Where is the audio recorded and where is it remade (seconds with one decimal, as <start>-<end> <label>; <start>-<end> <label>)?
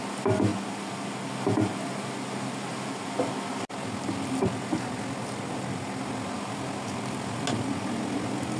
0.0-8.6 recorded